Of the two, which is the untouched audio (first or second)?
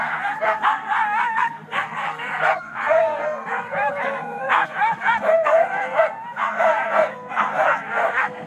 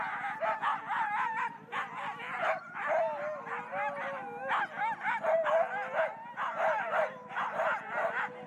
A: second